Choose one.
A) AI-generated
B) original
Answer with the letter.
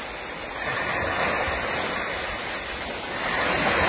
B